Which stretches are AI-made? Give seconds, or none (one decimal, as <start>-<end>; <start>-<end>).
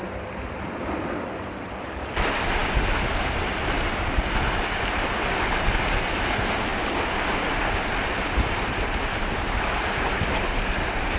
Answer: none